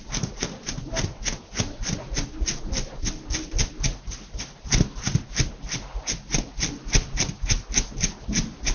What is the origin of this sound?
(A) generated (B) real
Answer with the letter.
B